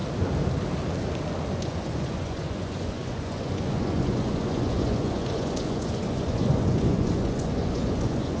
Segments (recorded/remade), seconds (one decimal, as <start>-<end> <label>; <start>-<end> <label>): 0.0-1.5 recorded; 1.5-8.4 remade